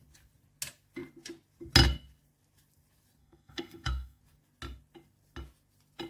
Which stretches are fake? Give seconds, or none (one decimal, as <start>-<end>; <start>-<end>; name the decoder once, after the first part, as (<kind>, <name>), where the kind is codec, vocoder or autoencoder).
3.2-4.2 (codec, SNAC)